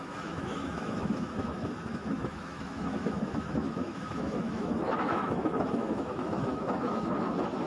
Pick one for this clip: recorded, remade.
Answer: remade